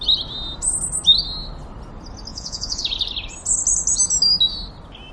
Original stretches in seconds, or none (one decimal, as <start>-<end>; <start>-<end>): 0.0-2.3; 2.8-5.1